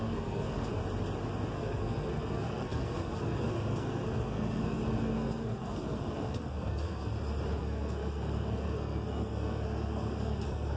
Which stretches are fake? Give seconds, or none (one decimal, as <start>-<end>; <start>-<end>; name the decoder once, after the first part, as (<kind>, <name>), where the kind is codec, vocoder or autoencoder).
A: 0.0-0.8 (codec, SNAC); 1.5-7.1; 7.6-10.8